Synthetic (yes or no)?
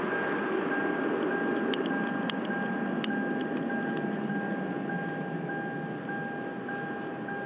no